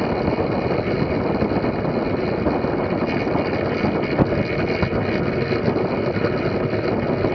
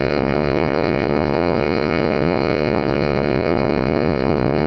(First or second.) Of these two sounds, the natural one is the first